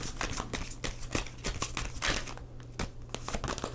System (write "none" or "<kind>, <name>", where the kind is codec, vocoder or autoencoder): none